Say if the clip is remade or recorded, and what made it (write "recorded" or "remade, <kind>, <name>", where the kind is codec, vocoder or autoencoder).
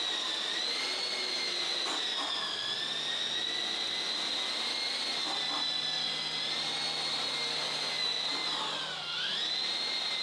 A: recorded